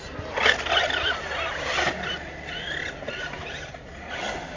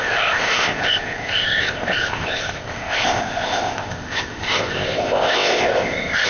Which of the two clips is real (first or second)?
first